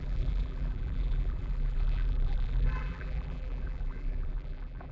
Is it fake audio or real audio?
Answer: fake